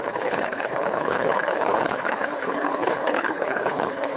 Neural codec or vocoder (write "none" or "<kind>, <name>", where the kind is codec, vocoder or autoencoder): codec, HILCodec